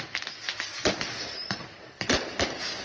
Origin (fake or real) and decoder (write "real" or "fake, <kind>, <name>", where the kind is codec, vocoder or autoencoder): real